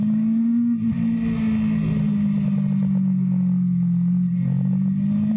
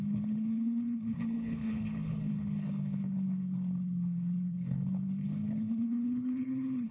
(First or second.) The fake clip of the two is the second